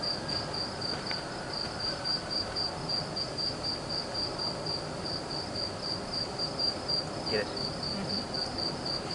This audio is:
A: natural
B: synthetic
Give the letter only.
A